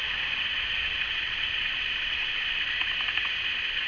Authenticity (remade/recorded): recorded